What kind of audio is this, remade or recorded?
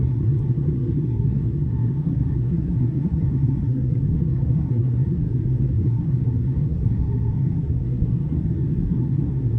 remade